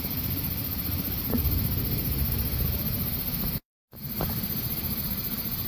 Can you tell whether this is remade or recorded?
remade